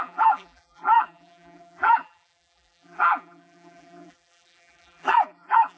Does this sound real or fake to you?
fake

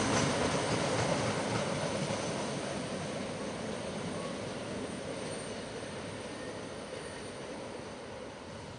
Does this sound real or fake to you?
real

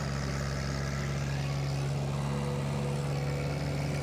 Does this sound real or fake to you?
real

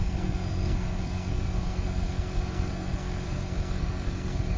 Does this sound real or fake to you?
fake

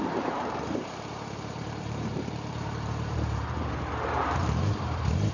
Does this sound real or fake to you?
fake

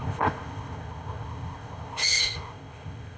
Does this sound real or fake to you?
fake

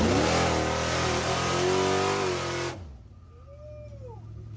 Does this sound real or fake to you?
real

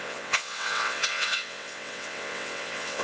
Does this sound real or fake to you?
fake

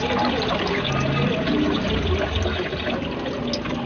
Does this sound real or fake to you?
real